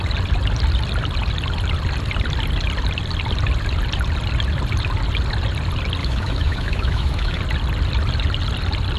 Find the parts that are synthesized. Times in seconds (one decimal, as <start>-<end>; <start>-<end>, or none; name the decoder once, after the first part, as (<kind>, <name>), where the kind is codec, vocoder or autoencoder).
6.0-7.4 (autoencoder, DAC-VAE)